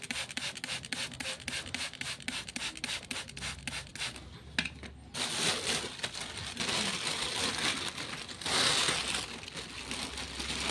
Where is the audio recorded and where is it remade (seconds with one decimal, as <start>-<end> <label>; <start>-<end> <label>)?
0.0-10.7 recorded